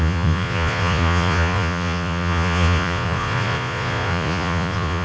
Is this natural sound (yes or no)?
no